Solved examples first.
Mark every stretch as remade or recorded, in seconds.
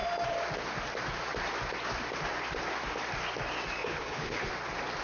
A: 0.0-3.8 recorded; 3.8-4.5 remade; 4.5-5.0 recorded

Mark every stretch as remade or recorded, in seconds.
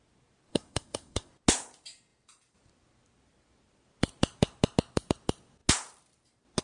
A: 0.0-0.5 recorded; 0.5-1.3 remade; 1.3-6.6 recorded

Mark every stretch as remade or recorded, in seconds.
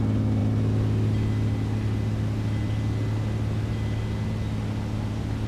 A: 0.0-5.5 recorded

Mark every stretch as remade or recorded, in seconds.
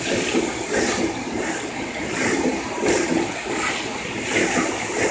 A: 0.0-5.1 recorded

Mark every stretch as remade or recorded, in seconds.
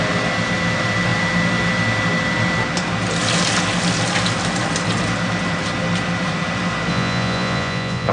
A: 0.0-6.9 recorded; 6.9-8.1 remade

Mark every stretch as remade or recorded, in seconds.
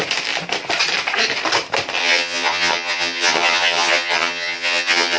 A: 0.0-2.0 recorded; 2.0-5.2 remade